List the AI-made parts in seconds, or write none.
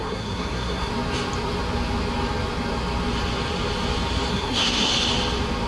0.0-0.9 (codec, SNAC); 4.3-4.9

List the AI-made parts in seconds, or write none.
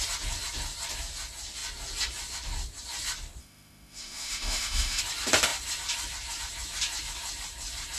3.4-5.0 (autoencoder, DAC-VAE)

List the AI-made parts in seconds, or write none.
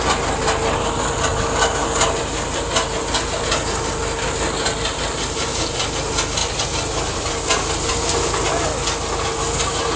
none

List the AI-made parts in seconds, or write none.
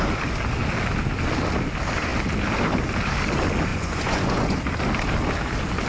3.7-4.6 (vocoder, Vocos)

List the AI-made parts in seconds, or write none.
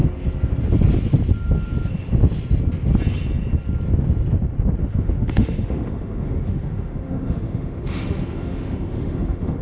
4.8-9.6 (autoencoder, DAC-VAE)